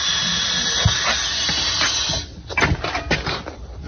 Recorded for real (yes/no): yes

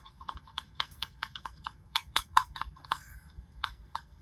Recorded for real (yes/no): no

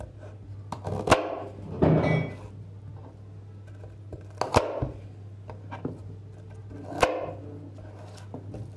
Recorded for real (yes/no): yes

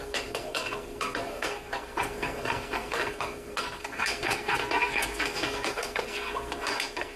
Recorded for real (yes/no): no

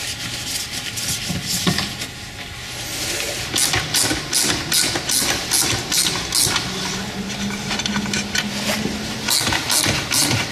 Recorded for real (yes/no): yes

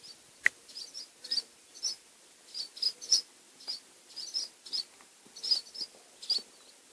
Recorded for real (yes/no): yes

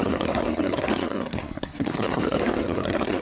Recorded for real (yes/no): no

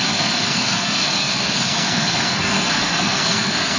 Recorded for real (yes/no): no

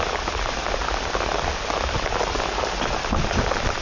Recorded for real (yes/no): yes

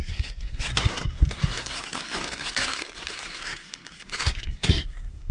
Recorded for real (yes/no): no